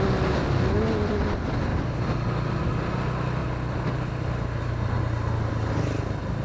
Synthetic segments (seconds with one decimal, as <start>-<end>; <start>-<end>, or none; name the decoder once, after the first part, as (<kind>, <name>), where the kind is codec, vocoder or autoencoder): none